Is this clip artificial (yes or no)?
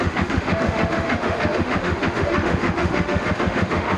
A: yes